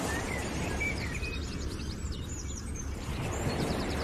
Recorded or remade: remade